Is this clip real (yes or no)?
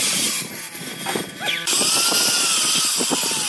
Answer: yes